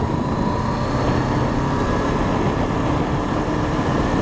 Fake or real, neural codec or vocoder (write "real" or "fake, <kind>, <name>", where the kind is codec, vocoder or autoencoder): real